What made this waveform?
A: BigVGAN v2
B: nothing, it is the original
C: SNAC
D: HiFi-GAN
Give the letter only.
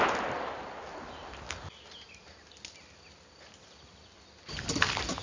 B